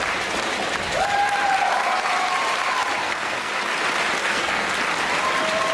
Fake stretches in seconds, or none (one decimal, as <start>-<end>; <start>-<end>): 3.0-3.5; 4.2-4.8